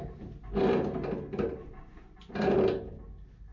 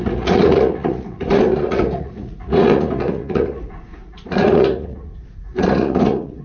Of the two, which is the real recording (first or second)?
first